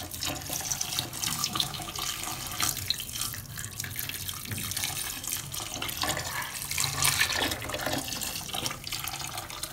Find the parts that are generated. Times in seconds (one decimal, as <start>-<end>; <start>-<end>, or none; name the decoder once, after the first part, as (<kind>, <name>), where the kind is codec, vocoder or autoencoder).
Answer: 1.4-1.9 (autoencoder, DAC-VAE)